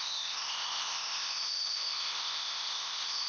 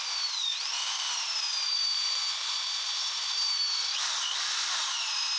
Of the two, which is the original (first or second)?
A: second